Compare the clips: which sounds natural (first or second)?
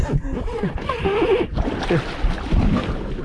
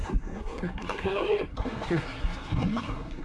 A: first